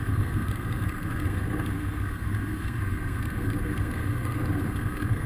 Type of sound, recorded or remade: remade